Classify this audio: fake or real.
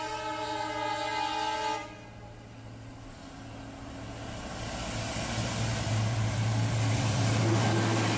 real